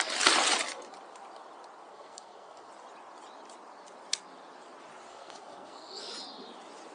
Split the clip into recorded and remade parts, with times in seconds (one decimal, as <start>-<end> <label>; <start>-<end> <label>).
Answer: 0.0-1.9 recorded; 1.9-2.7 remade; 2.7-5.1 recorded; 5.1-6.1 remade; 6.1-6.9 recorded